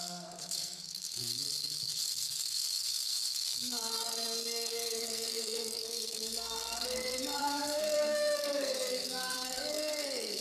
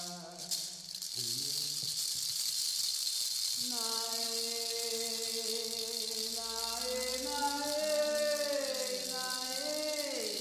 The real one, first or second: second